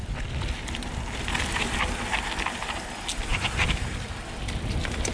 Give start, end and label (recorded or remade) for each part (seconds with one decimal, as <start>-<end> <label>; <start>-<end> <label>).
0.0-5.1 recorded